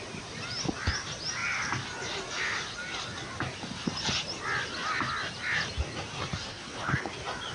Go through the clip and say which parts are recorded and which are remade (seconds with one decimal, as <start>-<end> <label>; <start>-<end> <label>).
0.0-6.5 recorded; 6.5-7.1 remade; 7.1-7.5 recorded